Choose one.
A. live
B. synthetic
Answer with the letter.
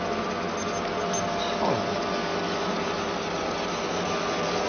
A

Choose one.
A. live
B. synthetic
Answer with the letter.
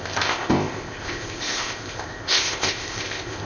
B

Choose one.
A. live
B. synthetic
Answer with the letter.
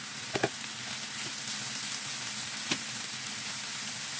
A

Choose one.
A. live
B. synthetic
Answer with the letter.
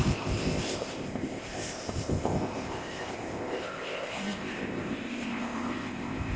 B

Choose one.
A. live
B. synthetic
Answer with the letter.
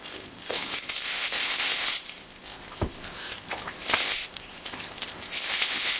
B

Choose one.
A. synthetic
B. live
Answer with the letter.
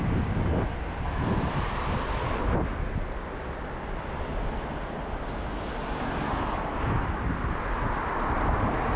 B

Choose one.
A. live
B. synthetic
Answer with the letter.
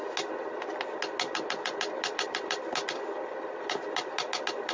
A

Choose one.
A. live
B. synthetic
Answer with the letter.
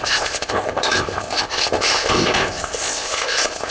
B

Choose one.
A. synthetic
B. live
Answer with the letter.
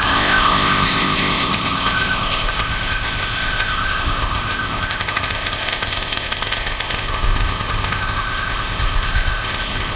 A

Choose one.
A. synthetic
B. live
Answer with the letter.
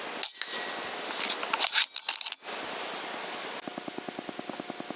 B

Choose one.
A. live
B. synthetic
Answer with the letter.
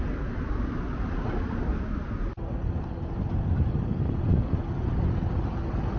A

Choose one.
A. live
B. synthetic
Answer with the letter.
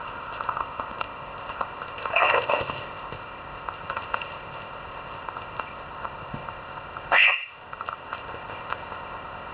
B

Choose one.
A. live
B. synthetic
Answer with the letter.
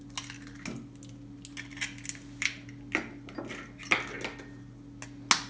A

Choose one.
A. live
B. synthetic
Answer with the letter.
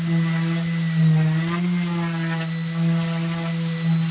A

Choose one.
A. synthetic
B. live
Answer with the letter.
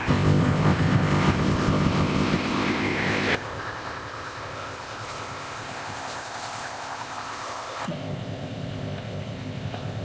A